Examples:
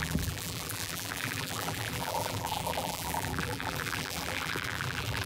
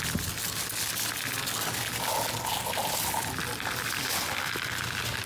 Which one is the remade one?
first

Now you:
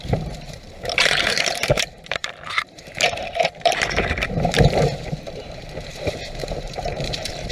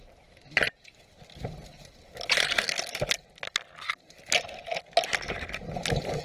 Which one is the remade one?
first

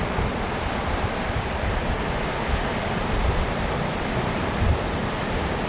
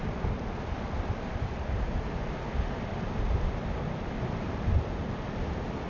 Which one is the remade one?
first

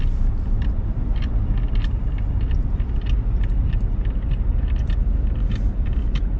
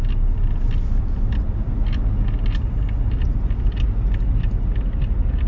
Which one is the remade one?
first